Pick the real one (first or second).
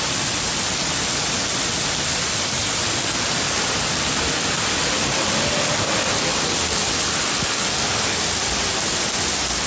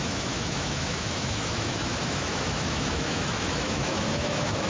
first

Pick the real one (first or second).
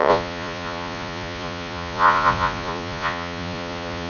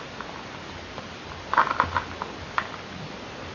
second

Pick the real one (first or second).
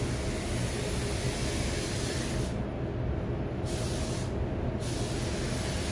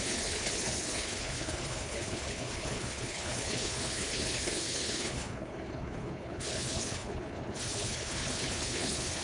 first